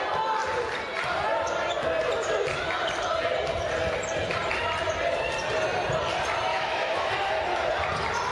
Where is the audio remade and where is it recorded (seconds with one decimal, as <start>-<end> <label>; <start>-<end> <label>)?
0.0-6.5 recorded; 6.5-7.1 remade; 7.1-8.3 recorded